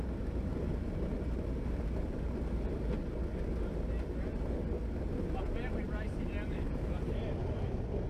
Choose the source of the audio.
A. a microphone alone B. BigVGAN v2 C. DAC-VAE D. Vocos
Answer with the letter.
A